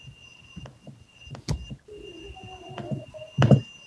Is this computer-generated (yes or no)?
no